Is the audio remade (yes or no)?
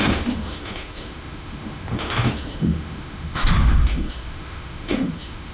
yes